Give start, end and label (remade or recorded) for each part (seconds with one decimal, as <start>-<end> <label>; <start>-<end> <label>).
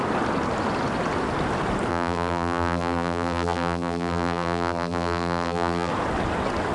0.0-1.9 recorded; 1.9-5.9 remade; 5.9-6.7 recorded